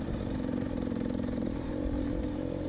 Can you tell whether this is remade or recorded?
remade